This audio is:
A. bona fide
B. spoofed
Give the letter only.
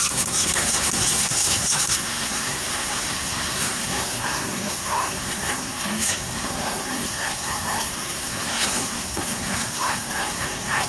B